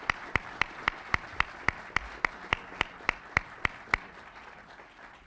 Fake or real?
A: real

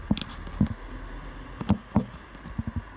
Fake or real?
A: real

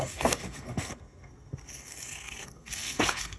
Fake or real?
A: fake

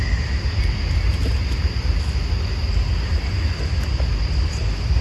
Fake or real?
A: real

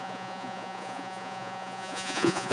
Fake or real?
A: fake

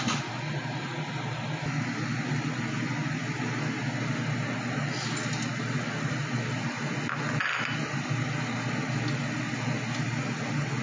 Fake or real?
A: real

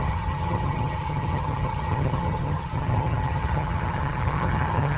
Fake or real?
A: fake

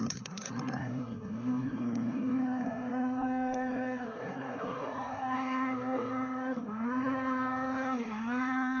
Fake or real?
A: fake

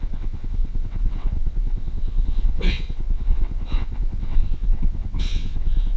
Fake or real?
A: fake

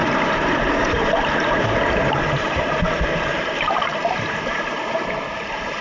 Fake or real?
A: fake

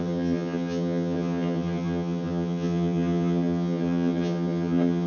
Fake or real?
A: fake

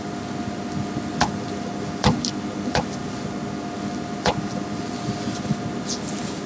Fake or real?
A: real